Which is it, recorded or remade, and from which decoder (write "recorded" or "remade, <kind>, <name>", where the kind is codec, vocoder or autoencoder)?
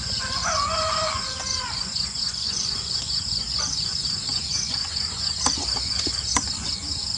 remade, vocoder, Vocos